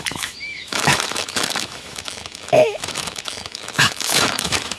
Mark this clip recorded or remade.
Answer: remade